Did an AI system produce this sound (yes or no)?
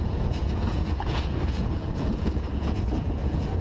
yes